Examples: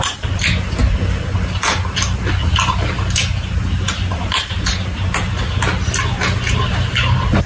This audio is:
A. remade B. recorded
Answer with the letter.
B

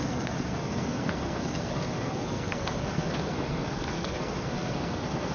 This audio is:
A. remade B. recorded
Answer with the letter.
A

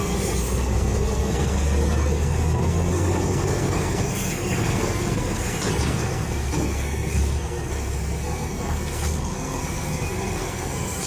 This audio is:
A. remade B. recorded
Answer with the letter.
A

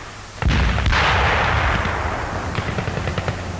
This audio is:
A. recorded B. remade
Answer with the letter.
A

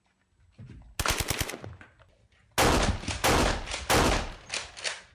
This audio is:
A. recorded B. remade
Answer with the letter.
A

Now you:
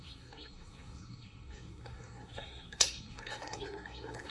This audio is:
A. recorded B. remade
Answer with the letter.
B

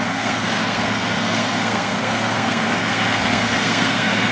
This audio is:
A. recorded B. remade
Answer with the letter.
B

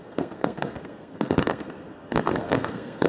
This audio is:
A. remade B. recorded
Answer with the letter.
A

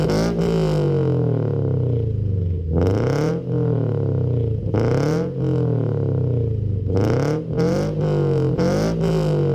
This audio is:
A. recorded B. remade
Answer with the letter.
A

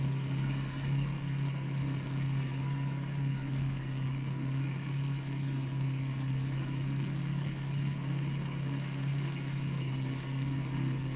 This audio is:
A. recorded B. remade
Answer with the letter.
B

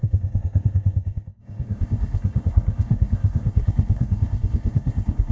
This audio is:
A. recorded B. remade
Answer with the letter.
B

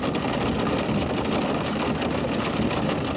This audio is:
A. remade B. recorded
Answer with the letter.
B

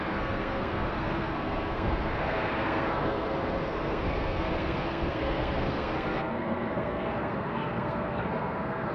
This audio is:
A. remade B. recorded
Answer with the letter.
A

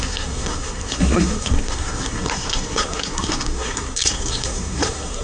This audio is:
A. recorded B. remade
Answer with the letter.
B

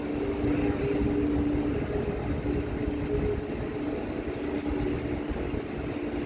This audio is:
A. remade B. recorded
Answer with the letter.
B